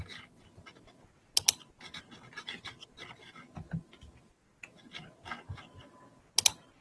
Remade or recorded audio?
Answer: recorded